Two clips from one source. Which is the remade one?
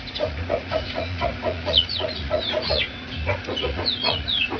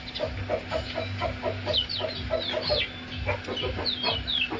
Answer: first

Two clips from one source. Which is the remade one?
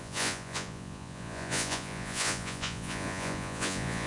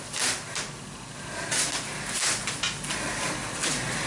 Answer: first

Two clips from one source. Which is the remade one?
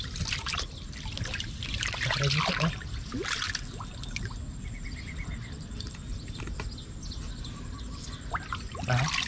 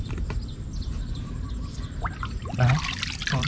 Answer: second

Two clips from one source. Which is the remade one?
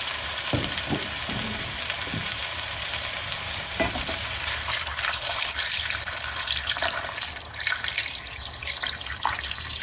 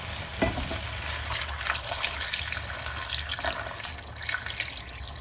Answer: first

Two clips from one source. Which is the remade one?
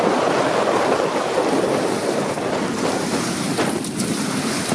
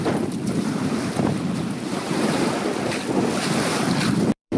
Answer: second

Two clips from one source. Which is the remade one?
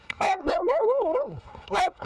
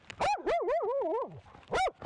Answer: first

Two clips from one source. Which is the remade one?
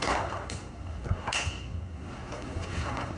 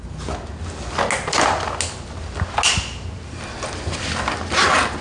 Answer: first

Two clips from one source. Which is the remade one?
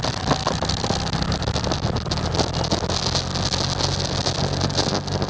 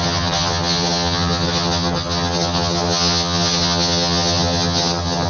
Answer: second